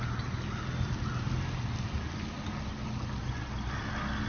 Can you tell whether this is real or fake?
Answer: real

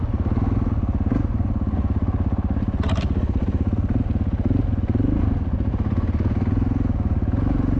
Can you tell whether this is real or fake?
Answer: real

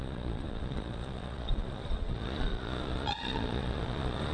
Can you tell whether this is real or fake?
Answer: fake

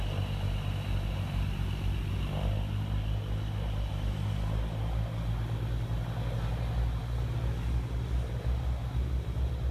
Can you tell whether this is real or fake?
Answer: real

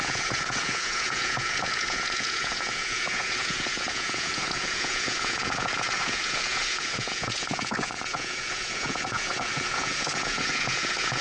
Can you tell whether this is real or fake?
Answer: fake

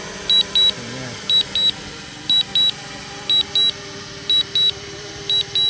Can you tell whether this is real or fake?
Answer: real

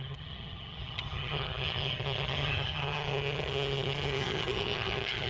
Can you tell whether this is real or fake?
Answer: fake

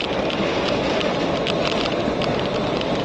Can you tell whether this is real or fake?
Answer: real